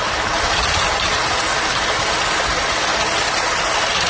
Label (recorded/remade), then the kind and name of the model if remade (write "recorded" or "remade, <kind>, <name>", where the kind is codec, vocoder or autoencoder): recorded